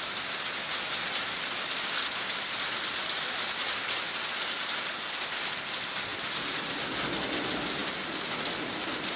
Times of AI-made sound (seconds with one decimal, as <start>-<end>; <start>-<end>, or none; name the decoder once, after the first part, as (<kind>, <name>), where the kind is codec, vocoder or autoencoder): 3.0-3.6 (vocoder, BigVGAN v2); 6.1-6.7